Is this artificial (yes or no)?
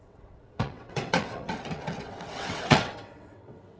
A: yes